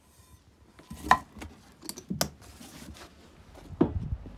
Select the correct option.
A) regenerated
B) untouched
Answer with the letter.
B